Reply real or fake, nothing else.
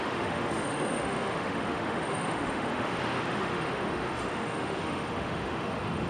fake